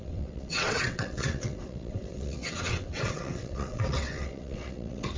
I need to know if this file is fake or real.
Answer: fake